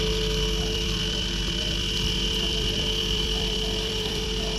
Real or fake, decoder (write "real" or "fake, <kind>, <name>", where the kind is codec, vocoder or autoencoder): fake, vocoder, BigVGAN v2